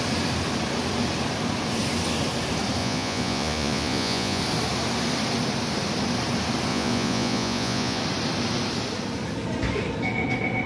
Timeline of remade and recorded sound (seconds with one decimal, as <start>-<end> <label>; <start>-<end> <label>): 0.0-2.8 recorded; 2.8-4.4 remade; 4.4-6.7 recorded; 6.7-8.0 remade; 8.0-10.7 recorded

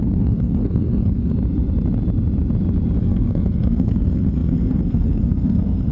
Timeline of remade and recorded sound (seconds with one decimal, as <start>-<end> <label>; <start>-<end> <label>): 0.0-1.3 remade; 1.3-3.0 recorded; 3.0-5.9 remade

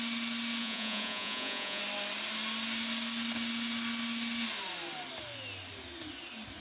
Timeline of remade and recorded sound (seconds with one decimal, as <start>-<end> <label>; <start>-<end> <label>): 0.0-0.6 recorded; 0.6-1.8 remade; 1.8-6.6 recorded